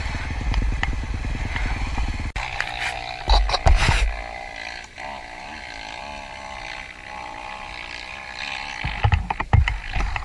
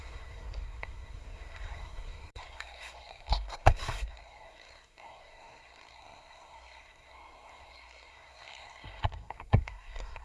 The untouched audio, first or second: first